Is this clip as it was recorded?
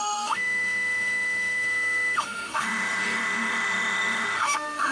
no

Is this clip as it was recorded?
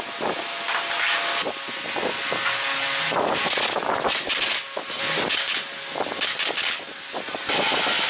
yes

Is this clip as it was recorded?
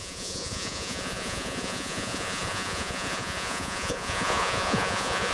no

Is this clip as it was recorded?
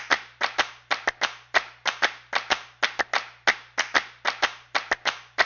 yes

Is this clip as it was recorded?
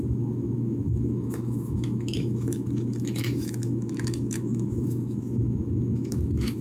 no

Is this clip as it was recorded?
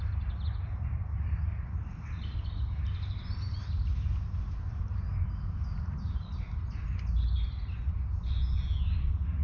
yes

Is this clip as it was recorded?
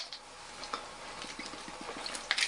yes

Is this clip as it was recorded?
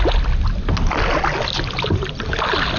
yes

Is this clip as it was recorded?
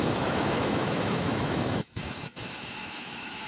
no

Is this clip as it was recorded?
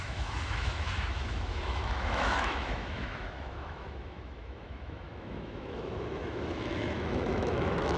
no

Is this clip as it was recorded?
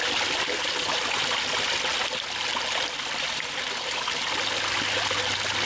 yes